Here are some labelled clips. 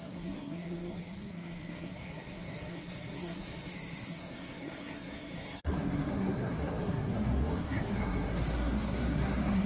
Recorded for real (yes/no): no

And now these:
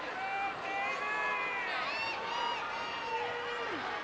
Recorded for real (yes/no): yes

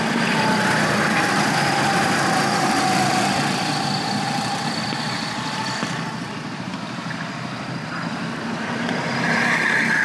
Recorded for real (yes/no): no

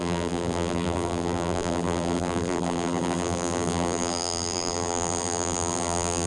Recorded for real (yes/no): no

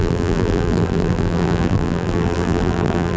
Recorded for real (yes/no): no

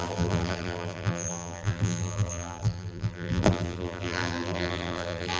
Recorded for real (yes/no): no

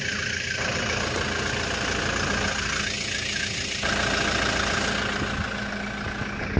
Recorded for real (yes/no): yes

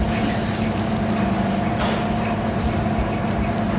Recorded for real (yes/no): yes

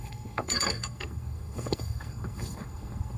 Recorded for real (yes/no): no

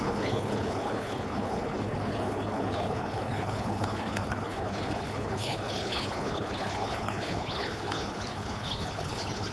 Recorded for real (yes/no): no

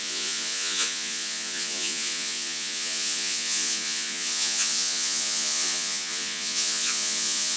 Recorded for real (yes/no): no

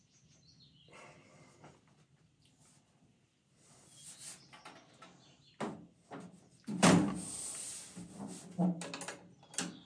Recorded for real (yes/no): yes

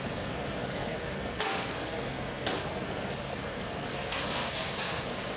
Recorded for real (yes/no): no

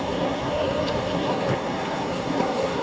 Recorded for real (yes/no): no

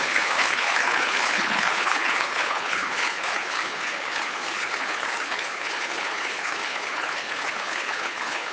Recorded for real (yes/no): no